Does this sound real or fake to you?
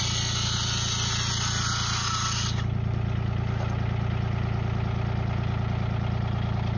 real